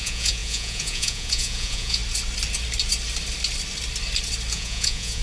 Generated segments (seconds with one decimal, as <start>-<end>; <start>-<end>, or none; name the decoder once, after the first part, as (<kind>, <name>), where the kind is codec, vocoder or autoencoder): 0.0-2.0 (vocoder, Vocos); 4.5-5.2